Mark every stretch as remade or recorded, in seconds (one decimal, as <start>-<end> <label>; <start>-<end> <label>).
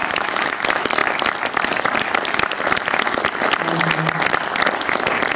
0.0-0.6 remade; 0.6-5.4 recorded